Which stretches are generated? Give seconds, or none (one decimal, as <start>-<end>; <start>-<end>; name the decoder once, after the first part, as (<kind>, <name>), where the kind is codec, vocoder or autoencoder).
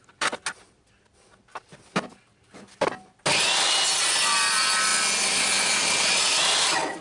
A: none